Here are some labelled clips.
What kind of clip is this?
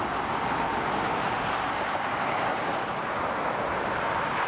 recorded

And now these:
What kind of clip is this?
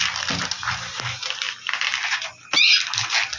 recorded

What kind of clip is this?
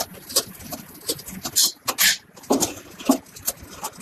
recorded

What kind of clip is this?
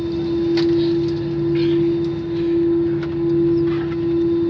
recorded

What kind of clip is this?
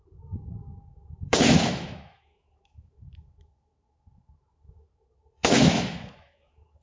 remade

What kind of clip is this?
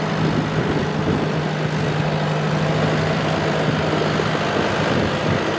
recorded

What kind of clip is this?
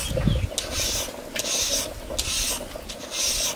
recorded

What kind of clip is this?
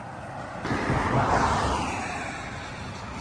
recorded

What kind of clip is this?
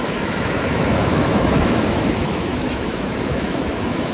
remade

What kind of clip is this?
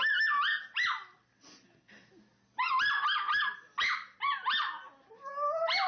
recorded